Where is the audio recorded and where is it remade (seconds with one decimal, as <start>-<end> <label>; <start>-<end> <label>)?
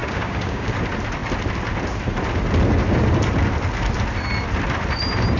0.0-0.7 remade; 0.7-5.4 recorded